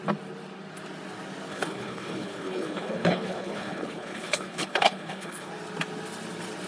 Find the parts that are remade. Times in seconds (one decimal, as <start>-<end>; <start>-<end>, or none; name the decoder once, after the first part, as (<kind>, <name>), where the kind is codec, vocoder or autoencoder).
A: 1.5-5.5 (codec, HILCodec)